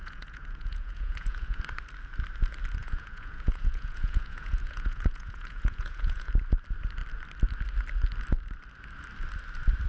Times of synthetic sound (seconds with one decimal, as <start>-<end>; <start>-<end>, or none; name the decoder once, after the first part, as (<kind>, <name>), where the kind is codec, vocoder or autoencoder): 0.0-1.6 (vocoder, Vocos); 2.8-6.3